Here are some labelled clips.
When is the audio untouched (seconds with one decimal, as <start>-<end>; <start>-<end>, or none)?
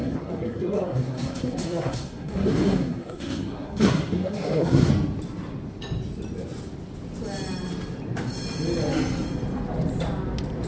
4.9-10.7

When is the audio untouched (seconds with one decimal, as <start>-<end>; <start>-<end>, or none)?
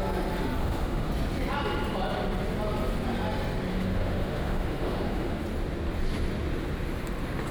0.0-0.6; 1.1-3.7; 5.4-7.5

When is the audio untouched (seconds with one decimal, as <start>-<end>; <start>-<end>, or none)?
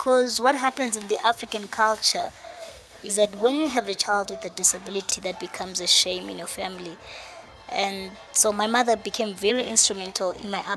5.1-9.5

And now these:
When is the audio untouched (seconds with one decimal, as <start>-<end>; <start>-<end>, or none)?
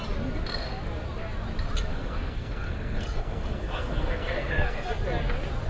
0.0-1.9; 4.9-5.7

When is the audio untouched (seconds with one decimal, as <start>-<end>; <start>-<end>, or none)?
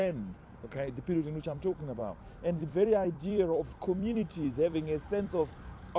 none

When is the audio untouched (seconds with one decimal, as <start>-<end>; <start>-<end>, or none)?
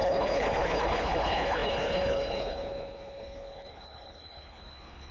none